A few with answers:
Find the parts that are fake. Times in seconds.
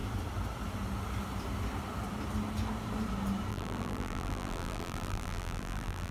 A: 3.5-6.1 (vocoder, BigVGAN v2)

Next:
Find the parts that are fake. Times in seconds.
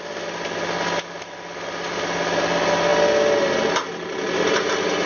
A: none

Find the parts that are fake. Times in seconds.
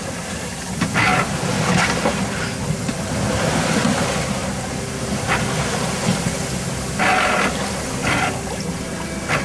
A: none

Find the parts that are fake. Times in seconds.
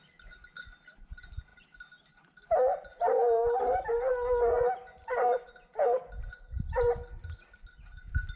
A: none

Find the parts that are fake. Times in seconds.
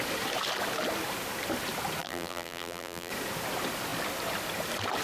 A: 2.0-3.1 (vocoder, BigVGAN v2)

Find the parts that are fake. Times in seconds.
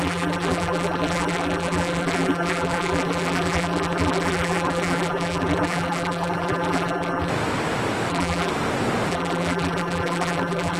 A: 0.0-7.3 (vocoder, BigVGAN v2); 8.1-8.5; 9.1-10.8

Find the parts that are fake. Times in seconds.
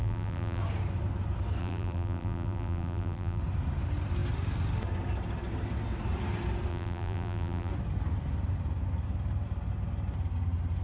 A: 0.0-0.6 (vocoder, BigVGAN v2); 1.6-3.4; 6.7-7.7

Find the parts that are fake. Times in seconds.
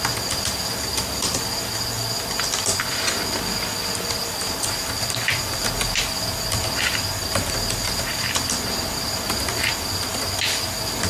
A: 4.2-8.1 (vocoder, BigVGAN v2)